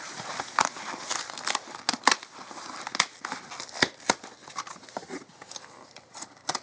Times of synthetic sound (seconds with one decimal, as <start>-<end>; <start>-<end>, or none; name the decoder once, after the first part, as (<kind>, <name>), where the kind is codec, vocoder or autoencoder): none